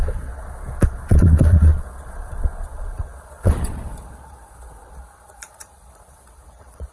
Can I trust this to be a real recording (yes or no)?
no